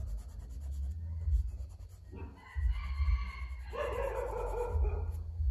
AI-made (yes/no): no